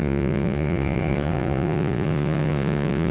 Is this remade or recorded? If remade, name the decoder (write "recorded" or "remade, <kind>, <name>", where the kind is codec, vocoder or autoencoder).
remade, vocoder, Vocos